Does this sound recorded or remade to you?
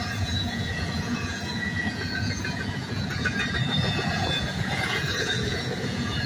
remade